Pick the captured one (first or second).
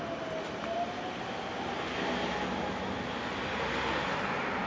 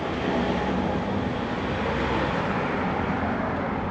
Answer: first